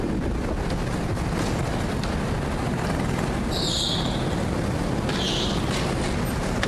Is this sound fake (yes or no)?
no